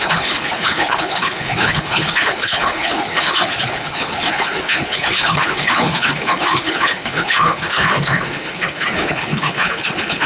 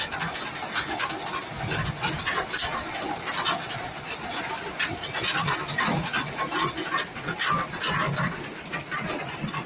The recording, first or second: second